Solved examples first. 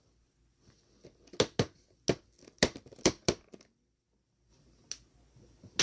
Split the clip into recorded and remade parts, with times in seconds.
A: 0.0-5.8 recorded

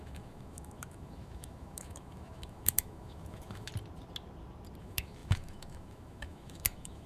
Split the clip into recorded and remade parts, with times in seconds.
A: 0.0-3.7 remade; 3.7-4.8 recorded; 4.8-7.1 remade